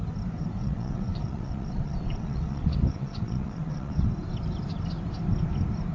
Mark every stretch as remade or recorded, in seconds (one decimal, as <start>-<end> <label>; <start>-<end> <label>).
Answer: 0.0-0.6 recorded; 0.6-4.1 remade; 4.1-5.9 recorded